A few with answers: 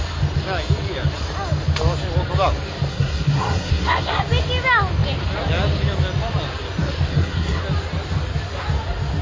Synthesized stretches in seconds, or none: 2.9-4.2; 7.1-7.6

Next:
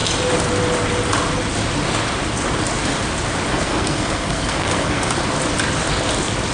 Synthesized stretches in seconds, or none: 3.5-5.1

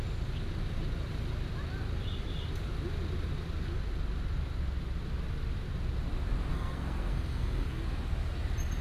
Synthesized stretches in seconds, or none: 6.5-7.8

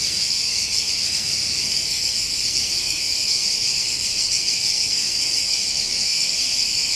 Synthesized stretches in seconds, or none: 0.0-7.0

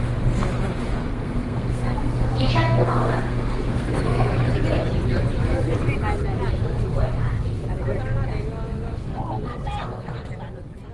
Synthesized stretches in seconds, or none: 1.1-4.3; 8.9-10.3

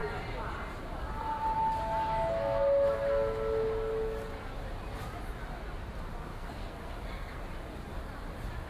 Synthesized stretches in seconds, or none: 6.3-7.4